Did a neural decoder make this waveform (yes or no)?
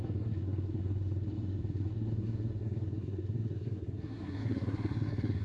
yes